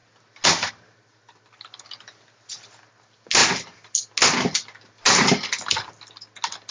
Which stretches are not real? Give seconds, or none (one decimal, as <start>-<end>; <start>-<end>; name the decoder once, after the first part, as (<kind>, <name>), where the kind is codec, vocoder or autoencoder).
none